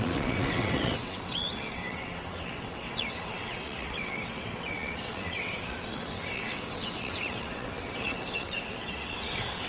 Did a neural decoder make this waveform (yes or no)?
yes